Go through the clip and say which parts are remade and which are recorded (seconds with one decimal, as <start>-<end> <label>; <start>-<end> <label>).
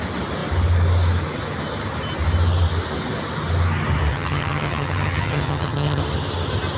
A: 0.0-4.1 recorded; 4.1-6.0 remade; 6.0-6.8 recorded